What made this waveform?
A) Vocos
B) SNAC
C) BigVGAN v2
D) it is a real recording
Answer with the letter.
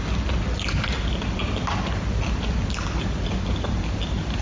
D